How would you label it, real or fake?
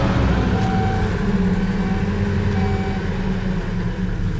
real